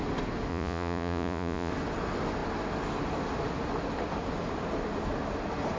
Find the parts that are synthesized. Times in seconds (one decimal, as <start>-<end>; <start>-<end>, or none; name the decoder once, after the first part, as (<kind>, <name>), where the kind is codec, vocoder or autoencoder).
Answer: 0.5-1.7 (vocoder, Vocos)